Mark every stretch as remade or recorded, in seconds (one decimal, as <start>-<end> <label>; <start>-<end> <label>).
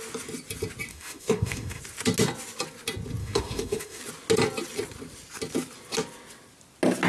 0.0-0.9 recorded; 0.9-1.8 remade; 1.8-3.2 recorded; 3.2-4.0 remade; 4.0-7.1 recorded